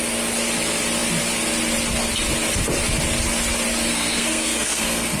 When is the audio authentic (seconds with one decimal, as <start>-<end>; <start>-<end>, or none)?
0.0-3.9